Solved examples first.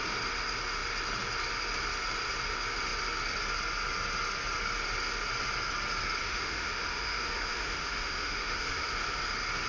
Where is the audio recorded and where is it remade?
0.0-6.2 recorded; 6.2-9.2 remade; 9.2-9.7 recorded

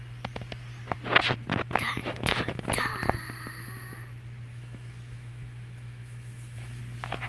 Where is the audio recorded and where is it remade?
0.0-2.0 recorded; 2.0-2.7 remade; 2.7-4.5 recorded; 4.5-6.8 remade; 6.8-7.3 recorded

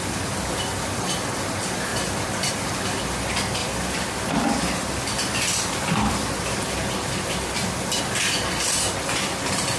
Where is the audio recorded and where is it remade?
0.0-1.9 recorded; 1.9-2.5 remade; 2.5-3.6 recorded; 3.6-8.0 remade; 8.0-9.8 recorded

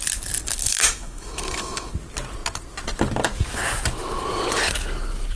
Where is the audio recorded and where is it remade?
0.0-0.6 recorded; 0.6-1.9 remade; 1.9-5.4 recorded